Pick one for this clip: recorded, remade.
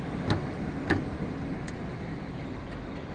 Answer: recorded